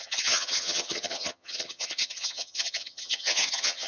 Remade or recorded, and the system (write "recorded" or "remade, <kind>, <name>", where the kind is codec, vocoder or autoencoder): remade, vocoder, HiFi-GAN